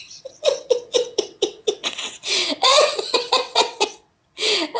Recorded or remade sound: remade